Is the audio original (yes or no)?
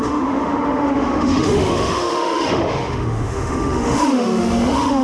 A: no